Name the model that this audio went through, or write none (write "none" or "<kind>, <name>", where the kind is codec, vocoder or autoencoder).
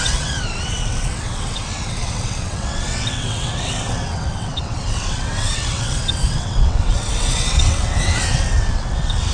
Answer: vocoder, WaveNeXt